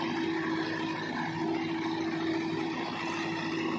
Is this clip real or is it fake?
real